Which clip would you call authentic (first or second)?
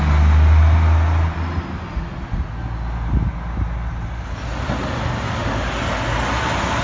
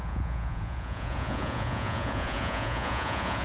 first